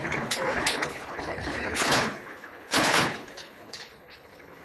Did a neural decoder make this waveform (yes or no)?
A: yes